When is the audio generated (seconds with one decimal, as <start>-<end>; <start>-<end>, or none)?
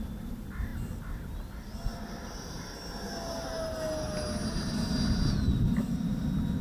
1.9-2.6